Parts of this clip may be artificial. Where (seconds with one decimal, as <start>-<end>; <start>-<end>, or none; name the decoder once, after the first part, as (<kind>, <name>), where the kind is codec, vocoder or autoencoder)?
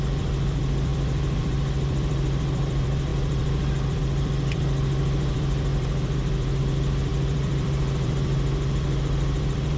0.0-9.8 (vocoder, BigVGAN v2)